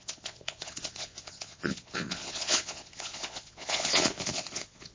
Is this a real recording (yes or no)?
no